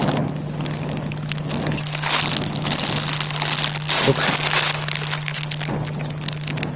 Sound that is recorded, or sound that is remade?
recorded